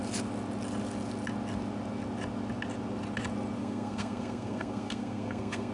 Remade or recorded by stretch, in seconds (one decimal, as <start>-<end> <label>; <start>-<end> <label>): 0.0-3.6 recorded; 3.6-5.7 remade